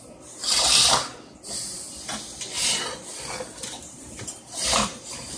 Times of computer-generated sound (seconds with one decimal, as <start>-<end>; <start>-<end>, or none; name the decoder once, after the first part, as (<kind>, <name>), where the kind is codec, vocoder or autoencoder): 0.0-1.1 (vocoder, BigVGAN v2); 3.8-5.4